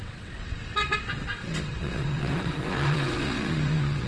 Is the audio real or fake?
fake